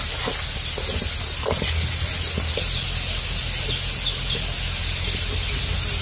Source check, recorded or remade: recorded